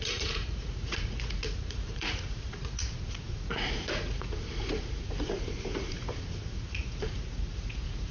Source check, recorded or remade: remade